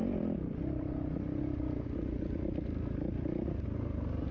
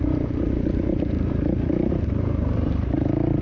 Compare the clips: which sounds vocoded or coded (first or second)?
second